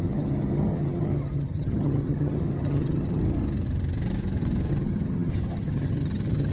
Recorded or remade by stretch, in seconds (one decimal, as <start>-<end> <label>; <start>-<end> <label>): 0.0-3.2 remade; 3.2-4.7 recorded; 4.7-6.5 remade